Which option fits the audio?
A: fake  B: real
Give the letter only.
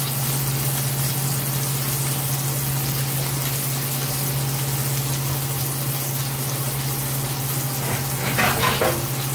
B